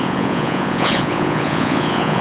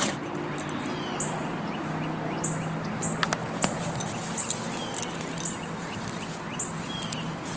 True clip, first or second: second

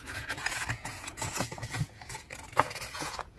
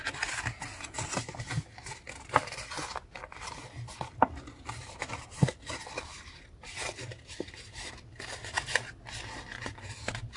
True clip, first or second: second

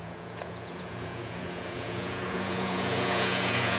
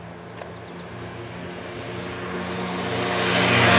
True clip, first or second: second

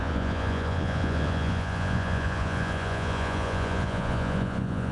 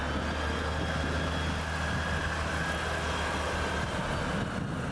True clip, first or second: second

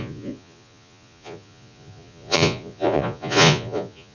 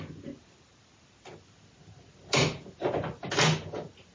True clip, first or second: second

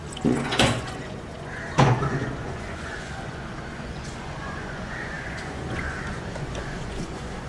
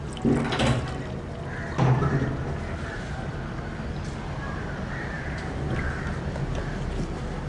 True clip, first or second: second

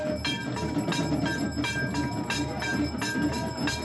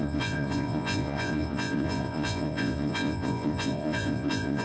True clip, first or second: first